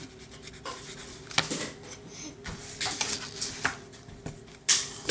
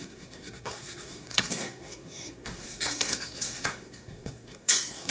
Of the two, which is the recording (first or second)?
first